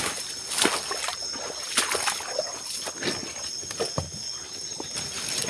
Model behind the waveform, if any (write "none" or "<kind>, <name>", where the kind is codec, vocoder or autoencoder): none